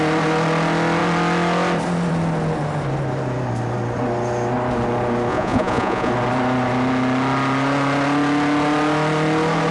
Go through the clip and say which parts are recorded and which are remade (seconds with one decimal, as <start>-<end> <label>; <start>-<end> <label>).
0.0-5.3 recorded; 5.3-6.1 remade; 6.1-9.7 recorded